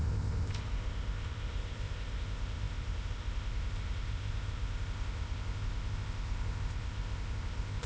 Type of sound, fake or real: fake